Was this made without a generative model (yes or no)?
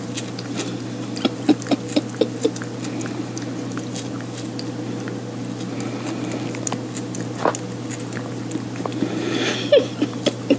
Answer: yes